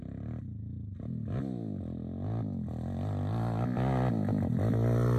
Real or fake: real